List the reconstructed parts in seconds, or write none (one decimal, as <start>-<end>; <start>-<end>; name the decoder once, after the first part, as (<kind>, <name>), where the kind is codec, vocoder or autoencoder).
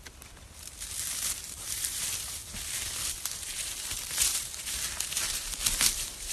none